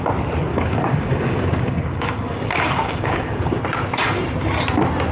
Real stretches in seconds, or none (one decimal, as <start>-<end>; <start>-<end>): 0.0-0.5; 3.6-5.1